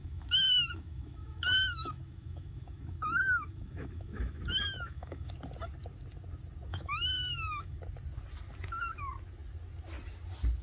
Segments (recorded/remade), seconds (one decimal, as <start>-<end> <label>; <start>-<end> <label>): 0.0-5.3 remade; 5.3-6.7 recorded; 6.7-7.8 remade; 7.8-10.6 recorded